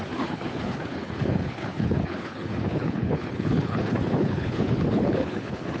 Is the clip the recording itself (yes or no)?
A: no